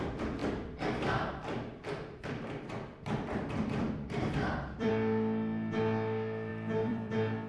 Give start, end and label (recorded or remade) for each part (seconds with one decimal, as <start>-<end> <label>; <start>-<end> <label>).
0.0-0.4 recorded; 0.4-4.9 remade; 4.9-6.5 recorded; 6.5-7.1 remade; 7.1-7.5 recorded